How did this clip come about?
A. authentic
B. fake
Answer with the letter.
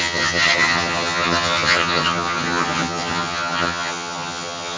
B